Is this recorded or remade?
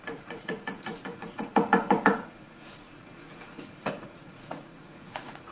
remade